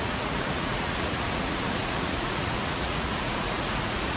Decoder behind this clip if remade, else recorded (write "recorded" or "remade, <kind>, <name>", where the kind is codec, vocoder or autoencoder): remade, vocoder, Vocos